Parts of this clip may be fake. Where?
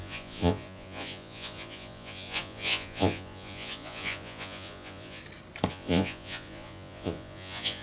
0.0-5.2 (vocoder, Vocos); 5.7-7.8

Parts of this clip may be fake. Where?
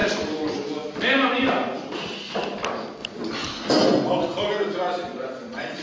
5.0-5.8 (vocoder, Vocos)